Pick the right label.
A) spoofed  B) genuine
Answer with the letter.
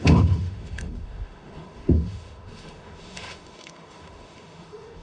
A